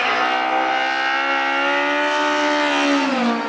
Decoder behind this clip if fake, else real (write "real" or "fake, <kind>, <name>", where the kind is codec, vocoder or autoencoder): real